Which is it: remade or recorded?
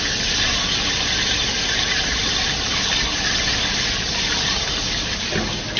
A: recorded